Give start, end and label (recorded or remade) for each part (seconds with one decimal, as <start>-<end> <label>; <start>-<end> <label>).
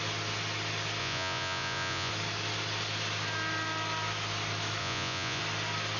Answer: 0.0-1.0 recorded; 1.0-2.1 remade; 2.1-4.8 recorded; 4.8-5.4 remade; 5.4-6.0 recorded